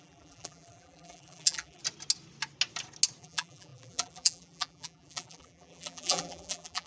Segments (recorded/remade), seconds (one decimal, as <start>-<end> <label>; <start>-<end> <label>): 0.0-1.8 remade; 1.8-3.2 recorded; 3.2-6.9 remade